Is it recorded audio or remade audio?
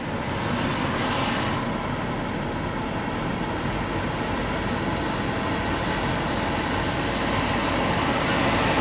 recorded